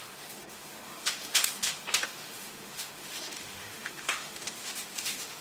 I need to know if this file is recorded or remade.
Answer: remade